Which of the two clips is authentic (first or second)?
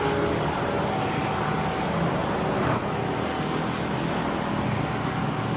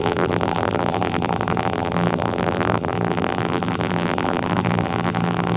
first